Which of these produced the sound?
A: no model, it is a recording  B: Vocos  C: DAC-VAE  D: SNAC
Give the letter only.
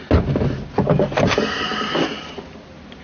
A